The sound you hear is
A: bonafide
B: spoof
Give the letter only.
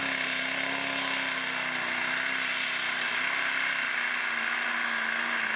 A